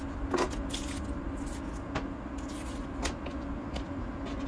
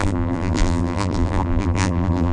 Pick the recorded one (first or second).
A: first